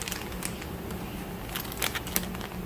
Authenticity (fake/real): real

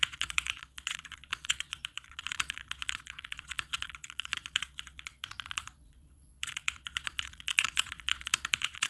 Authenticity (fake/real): fake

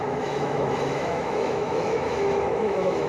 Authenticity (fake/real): fake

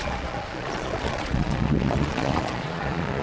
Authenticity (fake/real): fake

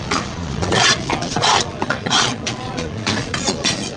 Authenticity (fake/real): fake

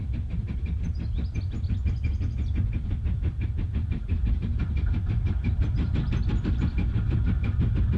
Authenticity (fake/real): real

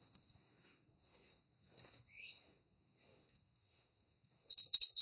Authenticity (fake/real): fake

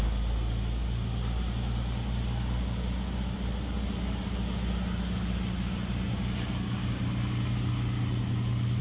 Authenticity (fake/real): real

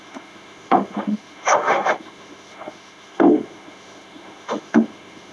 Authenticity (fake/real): fake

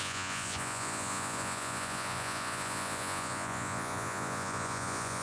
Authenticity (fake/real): fake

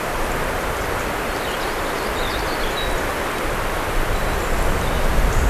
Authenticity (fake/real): real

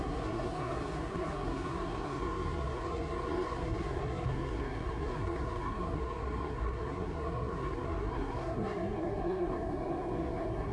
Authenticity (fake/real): fake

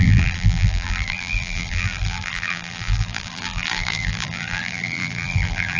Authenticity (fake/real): fake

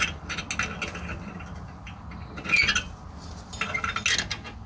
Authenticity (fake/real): real